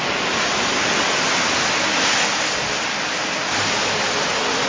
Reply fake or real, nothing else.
real